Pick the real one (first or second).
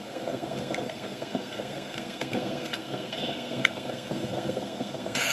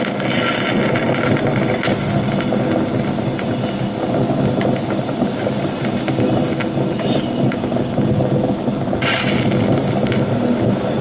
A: second